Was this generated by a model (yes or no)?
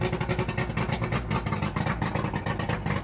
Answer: no